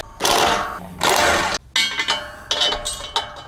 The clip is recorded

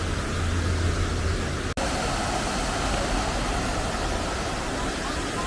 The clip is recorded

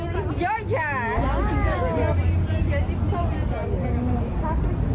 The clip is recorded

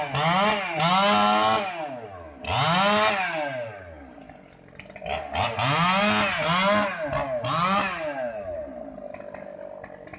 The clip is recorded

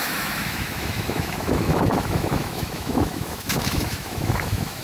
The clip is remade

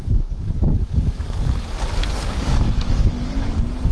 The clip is remade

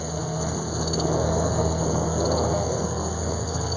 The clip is remade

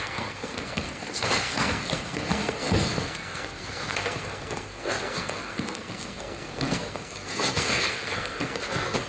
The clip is remade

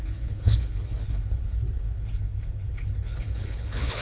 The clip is remade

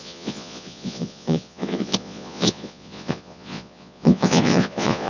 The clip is remade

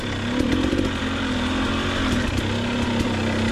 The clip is recorded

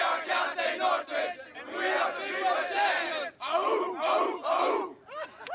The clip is recorded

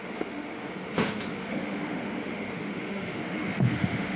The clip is remade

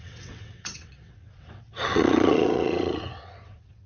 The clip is remade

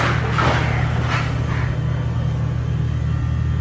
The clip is recorded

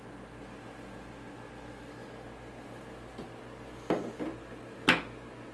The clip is recorded